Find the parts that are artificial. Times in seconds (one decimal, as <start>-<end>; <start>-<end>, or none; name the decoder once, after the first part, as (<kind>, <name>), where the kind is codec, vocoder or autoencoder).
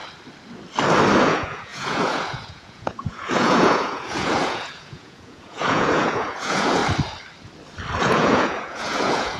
1.2-6.8 (vocoder, Vocos); 8.0-9.4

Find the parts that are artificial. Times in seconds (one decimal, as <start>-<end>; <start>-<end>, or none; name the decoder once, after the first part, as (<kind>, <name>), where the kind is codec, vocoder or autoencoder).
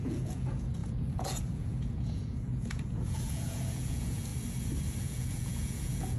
0.0-4.3 (vocoder, Vocos); 5.0-6.2